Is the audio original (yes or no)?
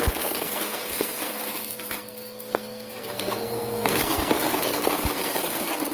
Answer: no